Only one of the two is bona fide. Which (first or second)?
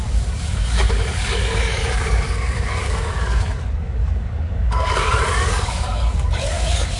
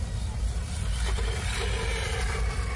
second